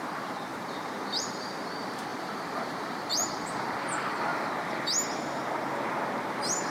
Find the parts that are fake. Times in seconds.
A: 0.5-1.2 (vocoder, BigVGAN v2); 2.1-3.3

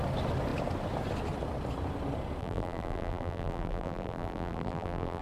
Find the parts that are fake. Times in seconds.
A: 2.4-5.2 (vocoder, BigVGAN v2)

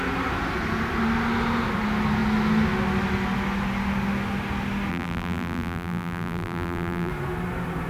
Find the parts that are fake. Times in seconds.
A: 4.9-7.1 (vocoder, BigVGAN v2)

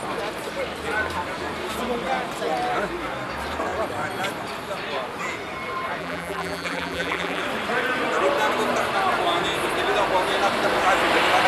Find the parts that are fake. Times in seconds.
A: 6.0-7.4 (vocoder, BigVGAN v2)

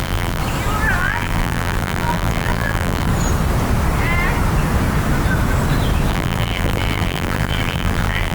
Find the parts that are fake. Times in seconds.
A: 0.0-0.4 (vocoder, BigVGAN v2); 1.0-3.1; 6.1-8.3